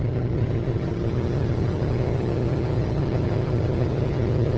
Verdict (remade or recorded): remade